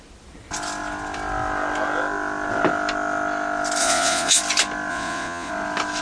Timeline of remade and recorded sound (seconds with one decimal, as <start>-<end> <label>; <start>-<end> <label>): 0.0-3.8 recorded; 3.8-4.4 remade; 4.4-4.9 recorded; 4.9-5.5 remade; 5.5-6.0 recorded